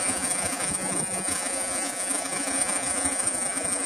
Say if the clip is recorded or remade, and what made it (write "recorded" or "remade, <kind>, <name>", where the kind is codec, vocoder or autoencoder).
remade, vocoder, Vocos